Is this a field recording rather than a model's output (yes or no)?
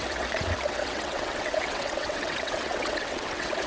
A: no